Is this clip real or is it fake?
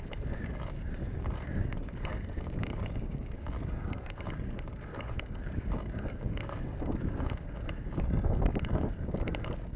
fake